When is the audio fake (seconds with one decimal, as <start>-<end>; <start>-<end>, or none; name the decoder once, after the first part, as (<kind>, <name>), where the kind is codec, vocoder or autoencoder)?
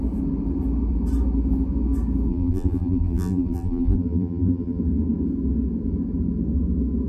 2.3-4.8 (vocoder, BigVGAN v2)